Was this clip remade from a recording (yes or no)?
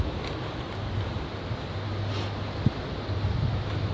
no